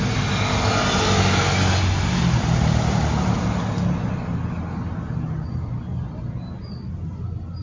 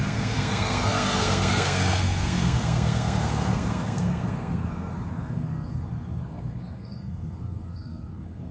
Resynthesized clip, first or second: second